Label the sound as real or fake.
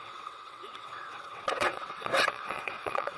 fake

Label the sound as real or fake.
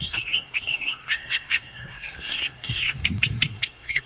fake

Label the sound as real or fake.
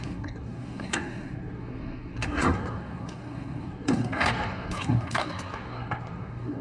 fake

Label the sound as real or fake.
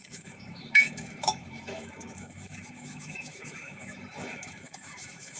fake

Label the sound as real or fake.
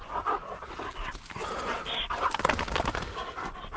real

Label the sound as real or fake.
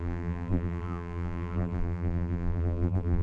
fake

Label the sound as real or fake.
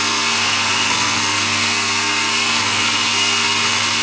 fake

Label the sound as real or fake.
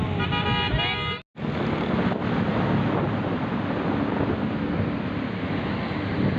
real